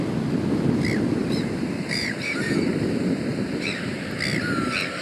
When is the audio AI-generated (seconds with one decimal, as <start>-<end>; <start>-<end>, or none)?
1.2-2.5; 3.3-3.9